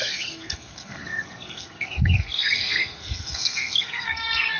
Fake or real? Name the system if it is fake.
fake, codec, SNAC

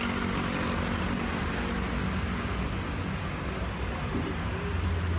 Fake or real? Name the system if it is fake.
real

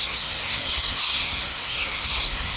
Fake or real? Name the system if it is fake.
fake, codec, SNAC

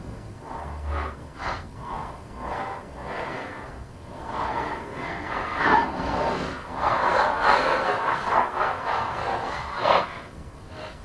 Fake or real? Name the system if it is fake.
fake, codec, SNAC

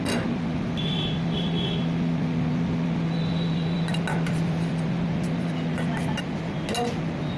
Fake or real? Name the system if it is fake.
real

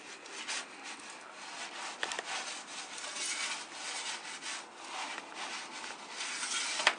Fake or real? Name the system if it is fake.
real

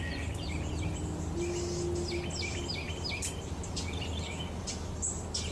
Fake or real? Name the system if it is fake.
real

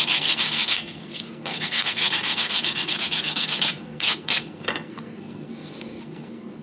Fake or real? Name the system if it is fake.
fake, codec, SNAC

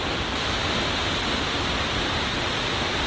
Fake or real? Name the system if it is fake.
real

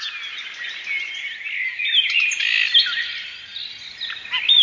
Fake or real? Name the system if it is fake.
real